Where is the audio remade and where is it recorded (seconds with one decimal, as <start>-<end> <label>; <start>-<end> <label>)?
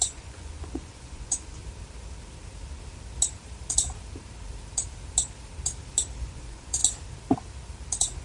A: 0.0-1.6 remade; 1.6-6.2 recorded; 6.2-6.8 remade; 6.8-8.2 recorded